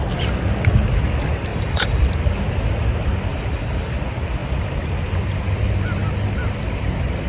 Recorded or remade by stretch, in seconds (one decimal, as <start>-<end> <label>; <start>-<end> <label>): 0.0-1.5 recorded; 1.5-2.1 remade; 2.1-3.3 recorded; 3.3-3.9 remade; 3.9-7.3 recorded